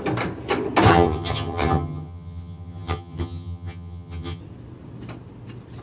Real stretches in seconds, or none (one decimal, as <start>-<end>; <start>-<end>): 0.0-0.9; 4.4-5.8